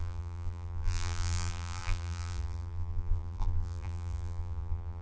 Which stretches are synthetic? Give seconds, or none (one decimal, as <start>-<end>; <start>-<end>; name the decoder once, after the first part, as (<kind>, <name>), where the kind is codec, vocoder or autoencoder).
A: 0.0-5.0 (vocoder, BigVGAN v2)